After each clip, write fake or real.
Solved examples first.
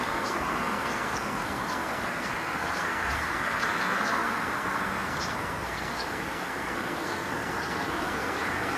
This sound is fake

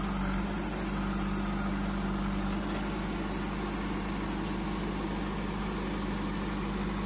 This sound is real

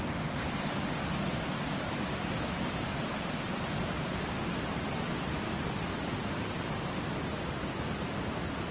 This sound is real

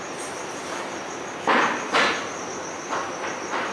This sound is real